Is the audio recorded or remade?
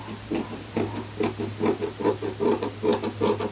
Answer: recorded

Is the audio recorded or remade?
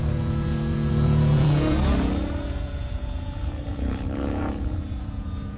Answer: remade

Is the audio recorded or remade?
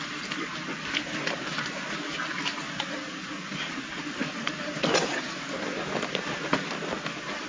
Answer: recorded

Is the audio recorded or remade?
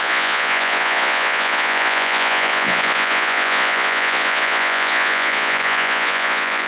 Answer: remade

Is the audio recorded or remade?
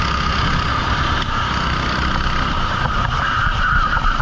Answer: recorded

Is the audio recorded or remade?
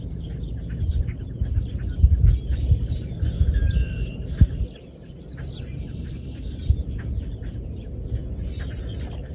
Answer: recorded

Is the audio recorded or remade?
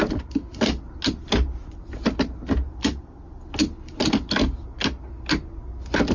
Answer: recorded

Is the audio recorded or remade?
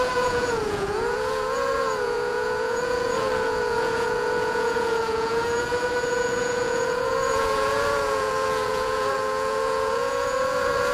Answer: remade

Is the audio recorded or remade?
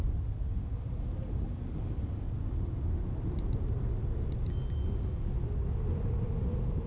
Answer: recorded